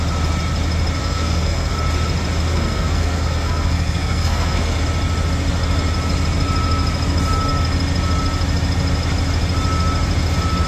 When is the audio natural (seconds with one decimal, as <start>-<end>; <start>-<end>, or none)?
0.0-1.0; 1.7-2.5; 4.8-10.7